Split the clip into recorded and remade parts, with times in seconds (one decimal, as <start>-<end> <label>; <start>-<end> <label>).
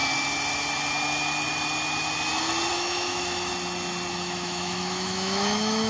0.0-2.7 recorded; 2.7-3.5 remade; 3.5-4.1 recorded; 4.1-5.9 remade